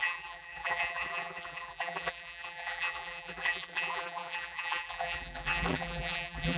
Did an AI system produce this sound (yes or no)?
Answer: yes